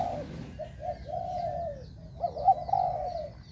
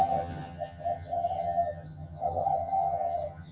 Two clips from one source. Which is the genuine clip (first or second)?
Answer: first